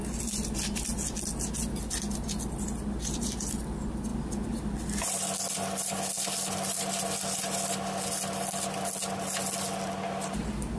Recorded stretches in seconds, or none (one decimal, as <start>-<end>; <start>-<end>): 0.0-10.8